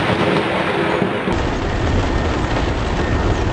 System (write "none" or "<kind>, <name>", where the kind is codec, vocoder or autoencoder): none